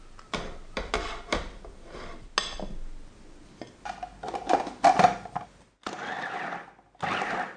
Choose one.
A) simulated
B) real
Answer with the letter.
B